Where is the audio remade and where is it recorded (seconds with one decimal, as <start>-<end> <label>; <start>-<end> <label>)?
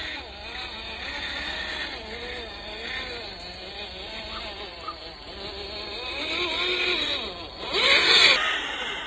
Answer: 0.0-4.7 recorded; 4.7-5.3 remade; 5.3-9.1 recorded